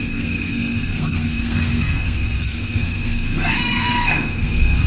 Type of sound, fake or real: fake